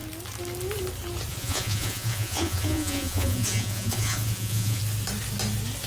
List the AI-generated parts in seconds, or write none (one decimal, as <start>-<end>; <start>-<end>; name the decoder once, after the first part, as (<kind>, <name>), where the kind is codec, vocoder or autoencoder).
1.3-4.8 (vocoder, Vocos)